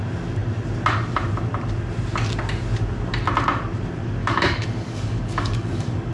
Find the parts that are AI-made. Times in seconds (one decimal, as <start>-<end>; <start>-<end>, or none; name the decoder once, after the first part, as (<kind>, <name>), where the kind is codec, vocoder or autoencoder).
4.2-6.1 (codec, DAC)

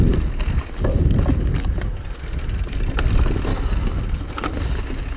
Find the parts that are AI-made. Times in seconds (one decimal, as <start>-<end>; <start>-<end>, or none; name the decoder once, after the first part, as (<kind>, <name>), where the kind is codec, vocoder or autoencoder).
3.5-4.0 (codec, DAC)